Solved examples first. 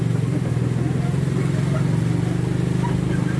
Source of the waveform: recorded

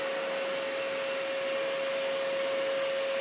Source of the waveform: recorded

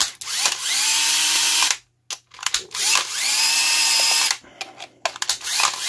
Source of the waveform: recorded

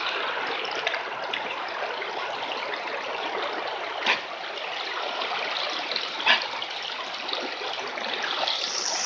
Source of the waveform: recorded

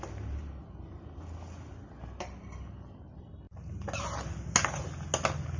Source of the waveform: recorded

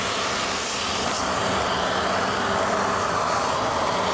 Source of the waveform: recorded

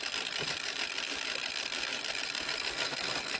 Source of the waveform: recorded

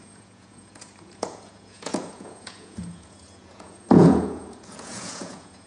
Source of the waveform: remade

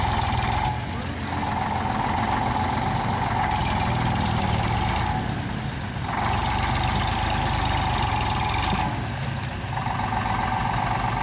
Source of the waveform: recorded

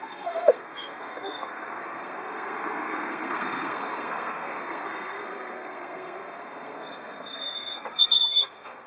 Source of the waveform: remade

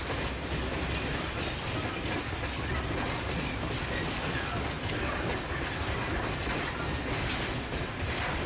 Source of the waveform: recorded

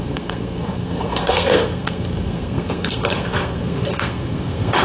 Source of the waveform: remade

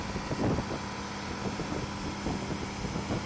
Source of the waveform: recorded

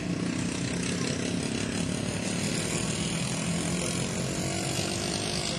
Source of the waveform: recorded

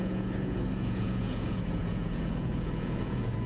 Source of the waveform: remade